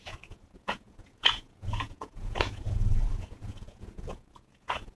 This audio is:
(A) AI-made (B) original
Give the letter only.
A